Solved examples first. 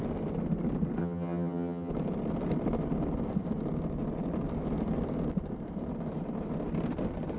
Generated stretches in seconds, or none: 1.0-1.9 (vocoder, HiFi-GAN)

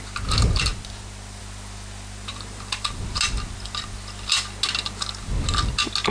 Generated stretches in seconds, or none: 2.3-3.0 (vocoder, BigVGAN v2)

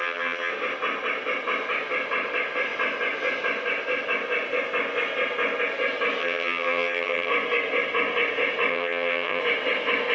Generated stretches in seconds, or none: 0.0-0.5 (vocoder, HiFi-GAN); 6.2-7.3; 8.7-9.4

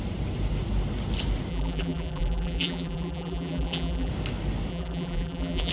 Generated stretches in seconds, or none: 1.5-4.1 (vocoder, BigVGAN v2); 4.7-5.7

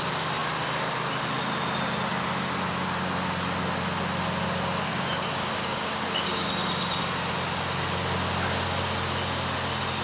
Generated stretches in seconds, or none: 4.9-6.5 (codec, DAC)

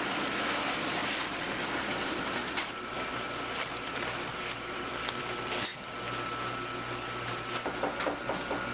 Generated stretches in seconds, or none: 2.4-4.9 (vocoder, BigVGAN v2)

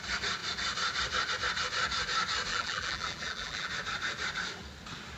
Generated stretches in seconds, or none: 2.5-3.7 (vocoder, BigVGAN v2)